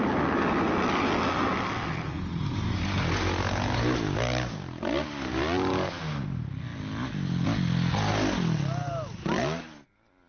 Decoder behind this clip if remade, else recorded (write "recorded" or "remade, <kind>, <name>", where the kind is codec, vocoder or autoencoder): recorded